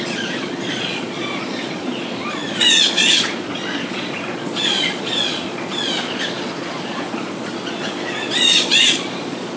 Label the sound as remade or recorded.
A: remade